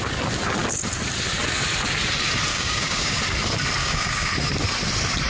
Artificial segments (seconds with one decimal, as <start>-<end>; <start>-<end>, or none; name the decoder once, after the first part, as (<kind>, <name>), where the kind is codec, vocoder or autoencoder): 2.5-3.2 (codec, DAC); 3.8-4.3